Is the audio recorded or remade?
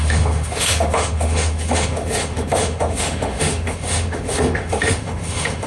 remade